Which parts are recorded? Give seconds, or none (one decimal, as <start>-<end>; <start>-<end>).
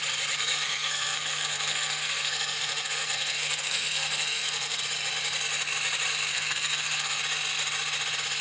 0.0-0.4; 4.8-6.3; 7.2-8.4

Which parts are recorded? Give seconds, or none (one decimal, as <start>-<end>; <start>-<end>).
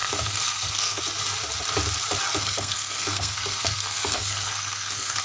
1.0-2.4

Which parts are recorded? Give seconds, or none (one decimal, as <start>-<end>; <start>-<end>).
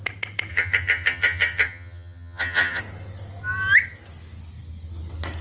0.0-0.5; 2.8-5.4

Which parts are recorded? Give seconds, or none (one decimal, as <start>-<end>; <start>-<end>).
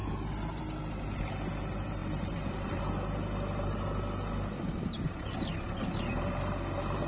0.0-2.0; 2.8-7.1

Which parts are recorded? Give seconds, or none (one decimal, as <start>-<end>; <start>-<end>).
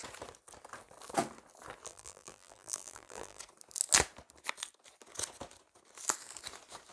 0.0-1.9; 3.4-6.9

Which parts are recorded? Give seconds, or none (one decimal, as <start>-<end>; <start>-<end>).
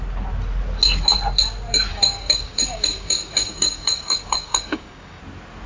0.0-1.9; 5.2-5.7